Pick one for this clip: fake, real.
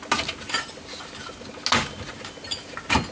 real